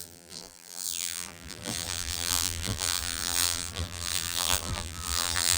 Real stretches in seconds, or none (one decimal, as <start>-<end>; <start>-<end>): none

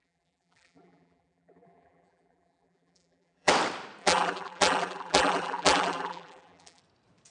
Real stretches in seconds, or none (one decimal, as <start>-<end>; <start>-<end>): 3.5-4.0; 6.8-7.3

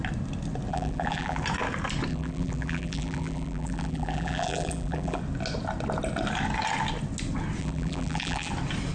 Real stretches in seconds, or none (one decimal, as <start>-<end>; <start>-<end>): 0.0-0.7; 1.4-2.1; 5.2-7.6; 8.5-8.9

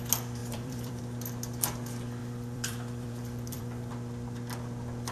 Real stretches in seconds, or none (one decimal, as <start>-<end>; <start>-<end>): 0.0-0.4; 1.0-2.2; 3.9-5.1

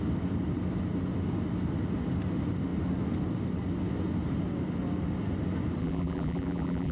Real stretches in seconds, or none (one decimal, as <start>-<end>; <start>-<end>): 0.0-5.8

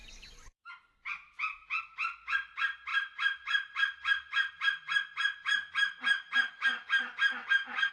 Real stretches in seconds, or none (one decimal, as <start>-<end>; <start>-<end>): 0.0-2.9

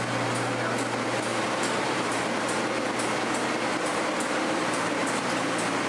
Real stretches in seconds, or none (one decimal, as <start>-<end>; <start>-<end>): 0.0-1.3; 2.2-3.9; 5.0-5.9

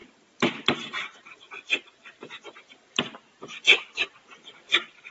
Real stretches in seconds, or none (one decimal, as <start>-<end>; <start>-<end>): 3.1-5.1